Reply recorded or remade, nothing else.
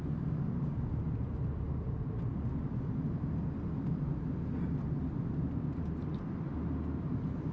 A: recorded